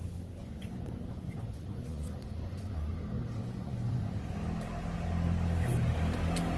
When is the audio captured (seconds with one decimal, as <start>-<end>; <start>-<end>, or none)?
0.0-0.4; 2.9-3.4; 4.3-6.6